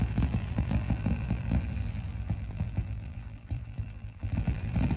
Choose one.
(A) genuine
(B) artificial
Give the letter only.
B